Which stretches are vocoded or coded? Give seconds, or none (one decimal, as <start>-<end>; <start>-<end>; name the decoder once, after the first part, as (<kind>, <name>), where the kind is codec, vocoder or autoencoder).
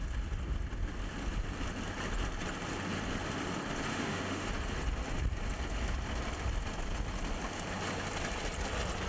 3.9-4.5 (autoencoder, DAC-VAE)